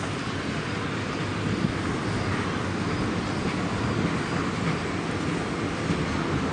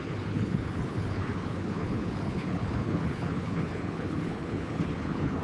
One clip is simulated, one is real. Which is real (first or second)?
first